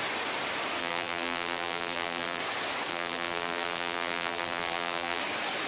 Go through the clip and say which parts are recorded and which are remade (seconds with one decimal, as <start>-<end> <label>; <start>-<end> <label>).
0.0-0.8 recorded; 0.8-2.4 remade; 2.4-2.9 recorded; 2.9-5.2 remade; 5.2-5.7 recorded